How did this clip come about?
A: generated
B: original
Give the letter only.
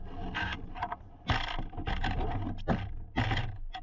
B